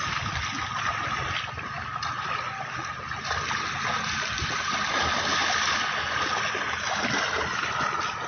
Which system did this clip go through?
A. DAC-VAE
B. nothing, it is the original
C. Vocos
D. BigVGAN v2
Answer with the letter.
B